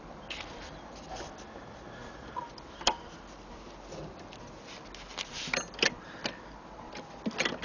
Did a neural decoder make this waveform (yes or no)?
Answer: no